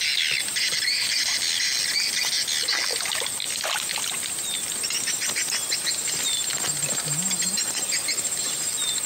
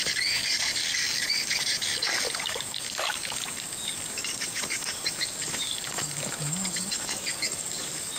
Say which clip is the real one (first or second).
first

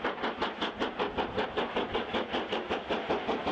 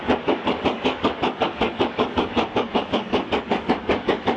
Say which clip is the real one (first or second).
first